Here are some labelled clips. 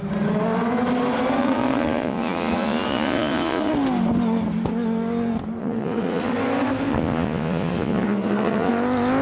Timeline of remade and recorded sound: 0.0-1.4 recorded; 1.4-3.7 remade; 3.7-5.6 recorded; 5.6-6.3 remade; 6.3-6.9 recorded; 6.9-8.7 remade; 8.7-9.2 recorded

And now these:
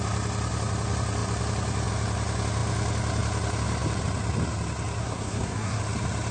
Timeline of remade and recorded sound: 0.0-5.0 recorded; 5.0-5.8 remade; 5.8-6.3 recorded

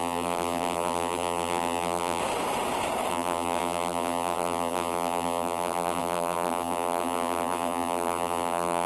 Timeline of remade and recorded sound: 0.0-2.2 remade; 2.2-3.1 recorded; 3.1-8.9 remade

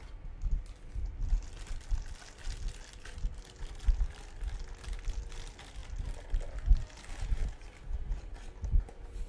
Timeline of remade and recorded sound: 0.0-9.3 recorded

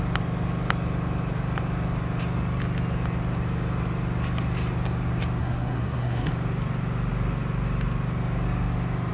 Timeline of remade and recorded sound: 0.0-5.4 recorded; 5.4-6.3 remade; 6.3-9.1 recorded

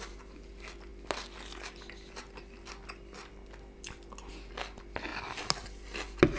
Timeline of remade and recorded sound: 0.0-6.4 recorded

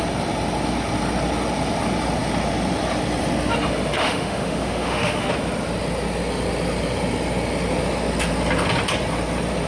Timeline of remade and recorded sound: 0.0-4.0 recorded; 4.0-5.3 remade; 5.3-9.7 recorded